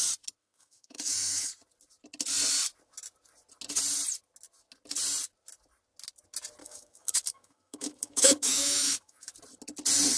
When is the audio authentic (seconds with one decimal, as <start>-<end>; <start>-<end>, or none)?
0.0-0.4; 1.5-6.6; 9.3-10.2